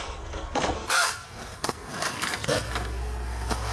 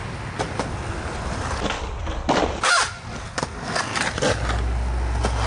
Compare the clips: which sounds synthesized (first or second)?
first